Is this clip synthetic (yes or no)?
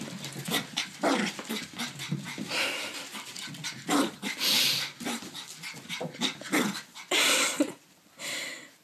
yes